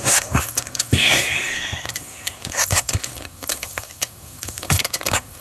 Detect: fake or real fake